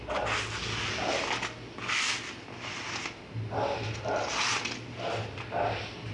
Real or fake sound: real